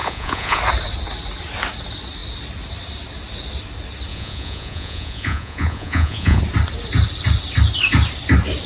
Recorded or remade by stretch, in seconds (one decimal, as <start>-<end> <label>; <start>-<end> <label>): 0.0-0.6 remade; 0.6-4.1 recorded; 4.1-6.4 remade; 6.4-8.7 recorded